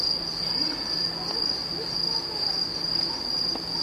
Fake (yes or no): no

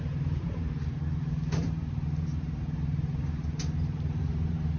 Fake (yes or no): yes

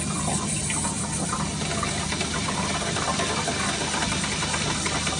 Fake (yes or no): no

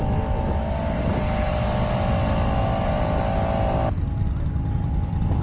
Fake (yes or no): no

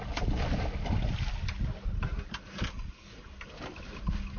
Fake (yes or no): no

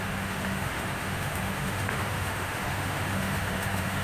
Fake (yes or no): yes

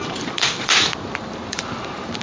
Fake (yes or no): yes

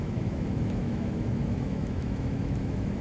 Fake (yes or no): yes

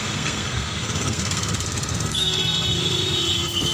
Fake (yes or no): yes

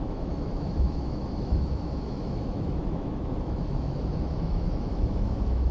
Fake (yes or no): yes